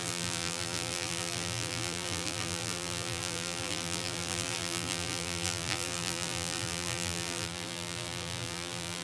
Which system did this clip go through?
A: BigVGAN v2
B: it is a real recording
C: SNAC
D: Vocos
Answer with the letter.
A